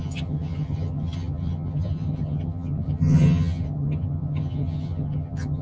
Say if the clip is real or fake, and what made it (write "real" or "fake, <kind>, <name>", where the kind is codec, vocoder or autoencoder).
fake, vocoder, HiFi-GAN